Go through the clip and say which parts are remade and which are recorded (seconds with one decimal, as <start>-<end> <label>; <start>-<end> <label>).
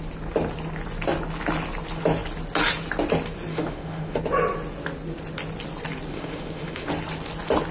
0.0-3.5 recorded; 3.5-4.2 remade; 4.2-6.1 recorded; 6.1-6.9 remade; 6.9-7.7 recorded